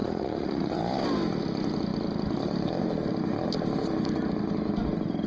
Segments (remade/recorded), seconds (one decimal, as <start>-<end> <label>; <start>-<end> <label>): 0.0-0.8 remade; 0.8-5.3 recorded